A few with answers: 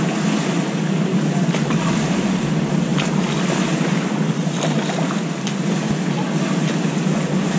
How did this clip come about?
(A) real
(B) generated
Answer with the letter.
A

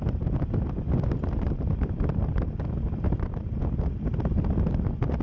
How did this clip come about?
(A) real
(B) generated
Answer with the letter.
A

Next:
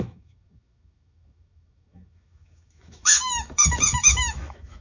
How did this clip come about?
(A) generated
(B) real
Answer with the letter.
A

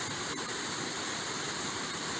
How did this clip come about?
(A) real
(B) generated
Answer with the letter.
A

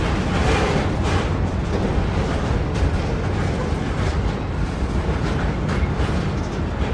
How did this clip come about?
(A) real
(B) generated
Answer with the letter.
A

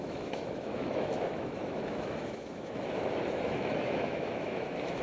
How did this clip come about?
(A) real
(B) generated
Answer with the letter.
B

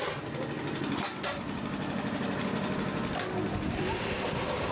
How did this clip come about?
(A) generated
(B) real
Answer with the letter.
B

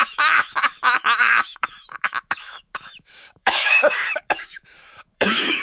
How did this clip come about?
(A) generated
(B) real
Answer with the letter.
A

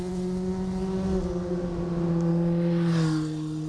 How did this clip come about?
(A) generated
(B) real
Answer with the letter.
B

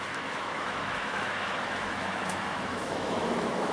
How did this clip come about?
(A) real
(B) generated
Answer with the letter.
B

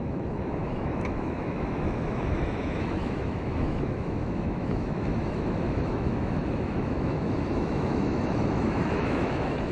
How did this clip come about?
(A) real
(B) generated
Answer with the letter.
B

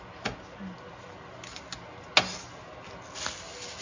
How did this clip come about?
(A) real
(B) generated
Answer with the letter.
A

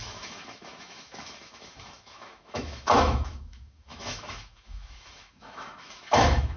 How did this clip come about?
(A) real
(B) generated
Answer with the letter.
B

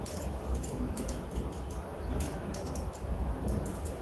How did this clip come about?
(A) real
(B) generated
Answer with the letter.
B